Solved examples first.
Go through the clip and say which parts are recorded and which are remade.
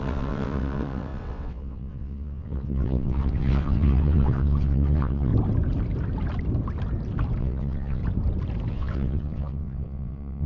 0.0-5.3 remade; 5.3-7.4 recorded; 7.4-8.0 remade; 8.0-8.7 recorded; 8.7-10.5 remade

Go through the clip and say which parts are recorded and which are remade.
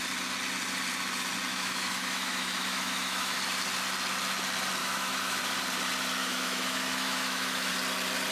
0.0-1.5 recorded; 1.5-3.4 remade; 3.4-4.8 recorded; 4.8-5.4 remade; 5.4-6.2 recorded; 6.2-7.7 remade; 7.7-8.3 recorded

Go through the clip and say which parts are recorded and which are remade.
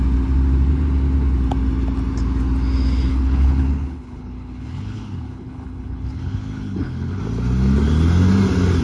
0.0-3.1 recorded; 3.1-7.2 remade; 7.2-8.8 recorded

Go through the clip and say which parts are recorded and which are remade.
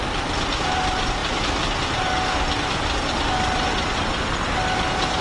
0.0-5.2 recorded